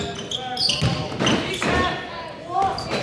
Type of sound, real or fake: real